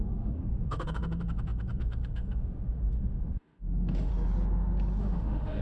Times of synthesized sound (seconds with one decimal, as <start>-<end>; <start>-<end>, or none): 0.0-4.1; 5.0-5.6